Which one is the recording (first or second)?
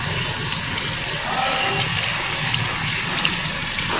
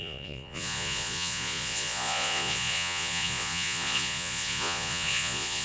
first